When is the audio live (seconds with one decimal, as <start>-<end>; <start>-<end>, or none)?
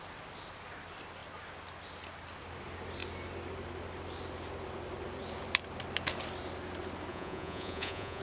0.0-7.1